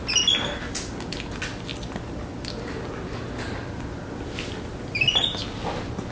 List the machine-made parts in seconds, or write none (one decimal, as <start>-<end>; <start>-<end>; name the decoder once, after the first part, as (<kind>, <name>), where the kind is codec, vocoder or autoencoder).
none